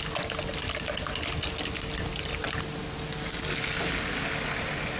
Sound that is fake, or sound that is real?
real